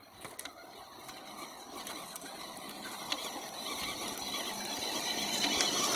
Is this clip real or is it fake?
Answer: real